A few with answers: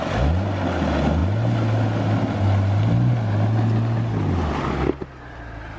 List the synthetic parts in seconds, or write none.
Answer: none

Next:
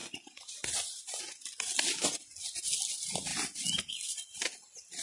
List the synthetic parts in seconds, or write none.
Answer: none

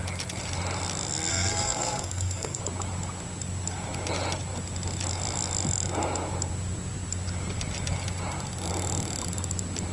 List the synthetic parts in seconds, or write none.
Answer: 1.3-2.6 (codec, SNAC)

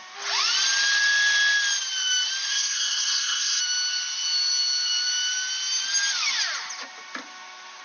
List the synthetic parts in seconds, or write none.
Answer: 2.5-3.6 (codec, SNAC)

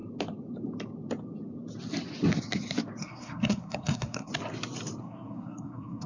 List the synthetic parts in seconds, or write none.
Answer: 3.0-4.3 (codec, SNAC); 5.0-6.1

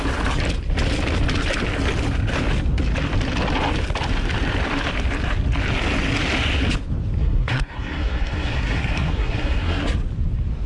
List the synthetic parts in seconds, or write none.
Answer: 7.2-9.8 (codec, SNAC)